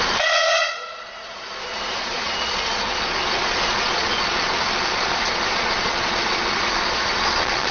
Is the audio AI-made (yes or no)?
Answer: yes